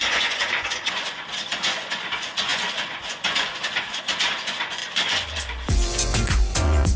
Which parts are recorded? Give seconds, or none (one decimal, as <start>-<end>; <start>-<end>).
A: none